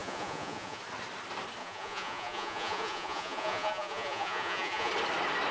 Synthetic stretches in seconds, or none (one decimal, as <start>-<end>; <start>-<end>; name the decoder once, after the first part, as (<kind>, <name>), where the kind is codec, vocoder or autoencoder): 0.0-0.8 (vocoder, Vocos); 1.6-4.9

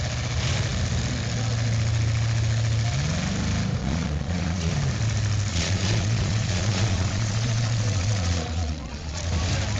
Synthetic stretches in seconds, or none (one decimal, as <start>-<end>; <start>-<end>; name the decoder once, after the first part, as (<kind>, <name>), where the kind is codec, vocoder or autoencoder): 3.8-4.7 (vocoder, Vocos); 5.5-9.2

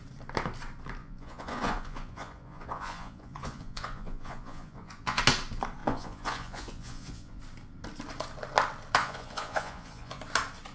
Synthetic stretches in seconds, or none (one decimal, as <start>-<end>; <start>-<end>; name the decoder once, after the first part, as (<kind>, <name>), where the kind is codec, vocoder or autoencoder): 1.0-5.2 (vocoder, Vocos); 5.8-7.4; 9.0-10.2

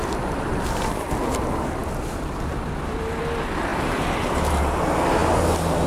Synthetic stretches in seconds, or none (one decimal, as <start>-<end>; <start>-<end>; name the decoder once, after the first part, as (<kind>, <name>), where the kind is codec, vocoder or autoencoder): none

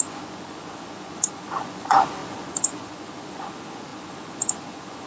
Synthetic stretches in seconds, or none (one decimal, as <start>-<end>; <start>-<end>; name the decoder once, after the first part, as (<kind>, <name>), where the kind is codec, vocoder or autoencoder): 0.0-5.1 (vocoder, Vocos)